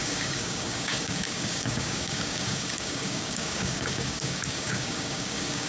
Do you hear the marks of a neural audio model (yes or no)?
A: yes